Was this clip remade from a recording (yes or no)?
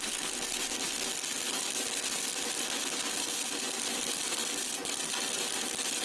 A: no